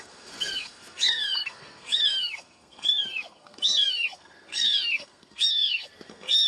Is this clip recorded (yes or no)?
no